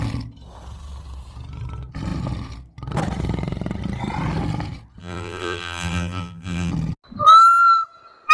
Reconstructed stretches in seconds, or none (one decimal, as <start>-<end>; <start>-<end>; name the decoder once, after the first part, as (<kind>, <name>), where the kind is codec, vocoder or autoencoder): 5.0-6.7 (vocoder, BigVGAN v2)